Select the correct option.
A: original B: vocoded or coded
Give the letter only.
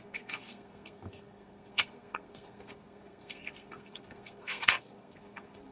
B